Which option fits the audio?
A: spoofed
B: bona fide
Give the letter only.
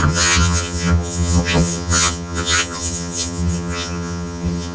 A